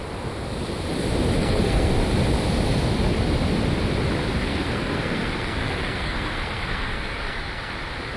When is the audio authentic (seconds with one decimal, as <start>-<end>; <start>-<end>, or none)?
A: 0.0-1.4; 1.9-4.4; 7.7-8.2